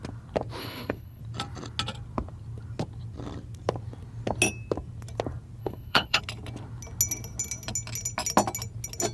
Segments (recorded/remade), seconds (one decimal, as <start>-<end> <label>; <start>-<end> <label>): 0.0-0.6 recorded; 0.6-1.2 remade; 1.2-5.6 recorded; 5.6-6.2 remade; 6.2-9.1 recorded